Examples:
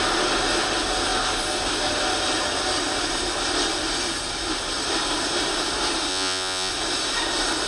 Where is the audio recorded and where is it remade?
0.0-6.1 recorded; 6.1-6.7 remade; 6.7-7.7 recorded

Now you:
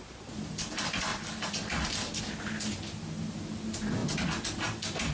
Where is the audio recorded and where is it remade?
0.0-5.1 recorded

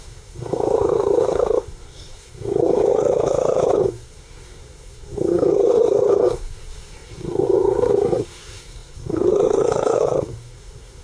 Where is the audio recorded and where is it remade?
0.0-11.0 remade

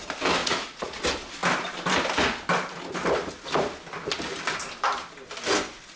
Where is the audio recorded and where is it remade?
0.0-0.4 recorded; 0.4-1.0 remade; 1.0-6.0 recorded